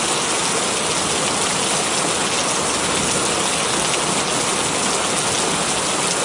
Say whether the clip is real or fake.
real